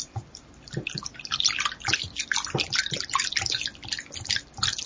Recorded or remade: recorded